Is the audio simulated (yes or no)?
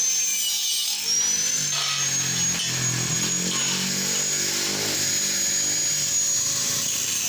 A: no